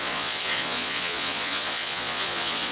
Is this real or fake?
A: fake